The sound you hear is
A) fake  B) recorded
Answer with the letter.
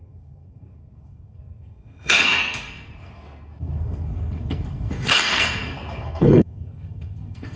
A